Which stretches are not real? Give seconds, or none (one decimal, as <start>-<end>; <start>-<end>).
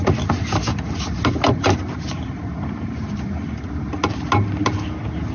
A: none